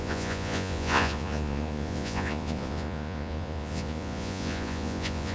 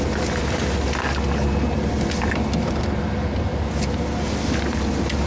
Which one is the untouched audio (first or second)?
second